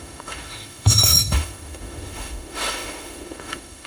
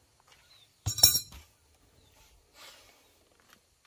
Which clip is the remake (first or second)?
first